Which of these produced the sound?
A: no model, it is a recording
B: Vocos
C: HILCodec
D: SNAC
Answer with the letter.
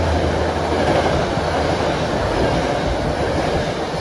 A